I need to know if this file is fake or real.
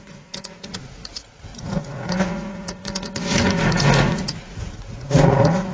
fake